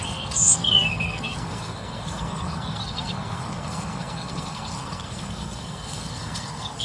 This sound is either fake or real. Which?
fake